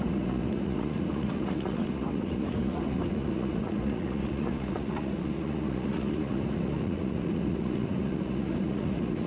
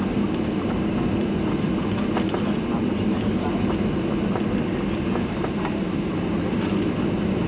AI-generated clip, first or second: first